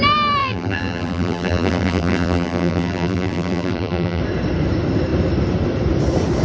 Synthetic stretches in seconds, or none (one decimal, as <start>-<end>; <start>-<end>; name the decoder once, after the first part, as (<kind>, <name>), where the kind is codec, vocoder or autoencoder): 0.4-4.2 (vocoder, BigVGAN v2)